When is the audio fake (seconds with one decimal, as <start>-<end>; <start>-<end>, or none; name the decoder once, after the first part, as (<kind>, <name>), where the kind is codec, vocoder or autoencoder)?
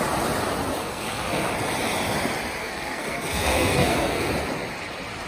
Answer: 0.8-1.5 (codec, SNAC); 2.6-4.3